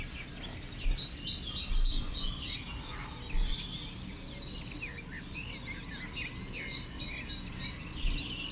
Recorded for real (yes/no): yes